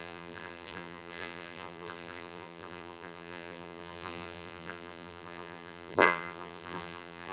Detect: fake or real fake